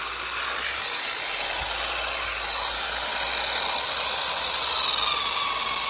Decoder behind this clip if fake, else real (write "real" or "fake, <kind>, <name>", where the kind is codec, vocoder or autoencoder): real